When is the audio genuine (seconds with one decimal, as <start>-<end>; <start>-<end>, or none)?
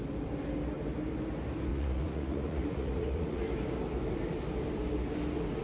0.0-1.7; 3.4-5.6